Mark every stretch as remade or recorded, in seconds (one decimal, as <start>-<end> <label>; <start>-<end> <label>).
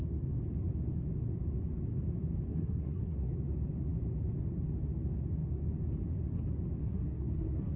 0.0-2.5 recorded; 2.5-3.3 remade; 3.3-6.8 recorded; 6.8-7.8 remade